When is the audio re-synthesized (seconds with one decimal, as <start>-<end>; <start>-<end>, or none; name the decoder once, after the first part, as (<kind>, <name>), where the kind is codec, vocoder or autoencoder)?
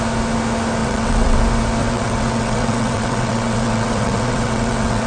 0.8-1.4 (vocoder, WaveNeXt); 1.8-5.1